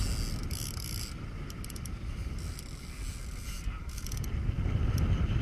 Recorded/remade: recorded